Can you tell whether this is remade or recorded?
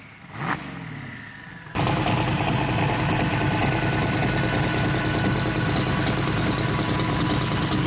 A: recorded